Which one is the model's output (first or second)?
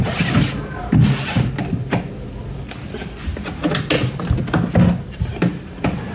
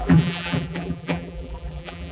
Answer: second